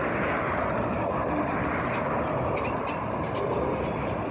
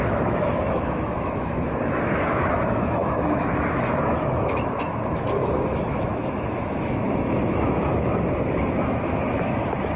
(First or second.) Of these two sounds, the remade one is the second